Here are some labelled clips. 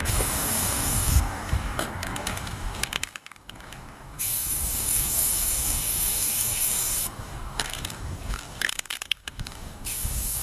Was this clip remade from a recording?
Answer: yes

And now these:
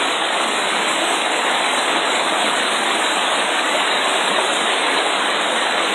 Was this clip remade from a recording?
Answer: yes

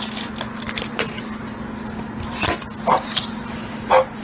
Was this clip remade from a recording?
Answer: no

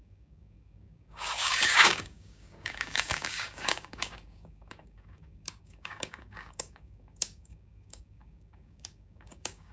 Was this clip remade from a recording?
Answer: yes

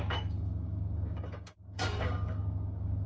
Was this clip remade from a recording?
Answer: yes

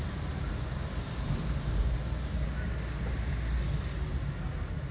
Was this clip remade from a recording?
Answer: no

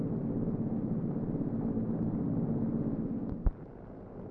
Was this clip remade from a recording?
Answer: no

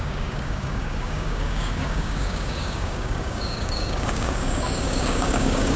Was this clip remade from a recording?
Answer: yes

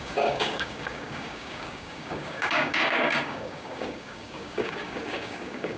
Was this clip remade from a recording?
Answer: yes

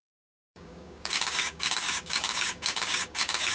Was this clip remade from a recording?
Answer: yes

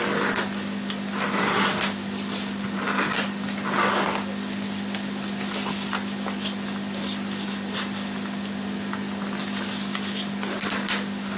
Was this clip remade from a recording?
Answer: no